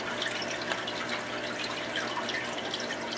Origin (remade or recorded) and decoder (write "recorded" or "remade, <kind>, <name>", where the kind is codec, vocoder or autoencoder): recorded